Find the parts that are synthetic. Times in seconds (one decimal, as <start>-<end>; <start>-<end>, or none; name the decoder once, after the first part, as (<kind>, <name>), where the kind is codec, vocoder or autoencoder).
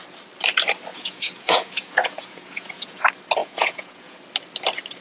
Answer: 0.9-3.0 (vocoder, Vocos); 3.4-4.2